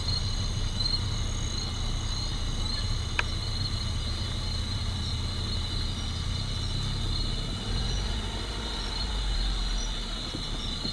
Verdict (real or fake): real